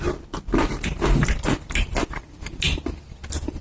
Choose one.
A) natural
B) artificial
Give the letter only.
B